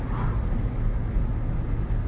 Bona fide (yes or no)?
yes